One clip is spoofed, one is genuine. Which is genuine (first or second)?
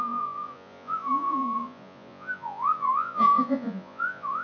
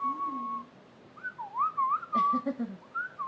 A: second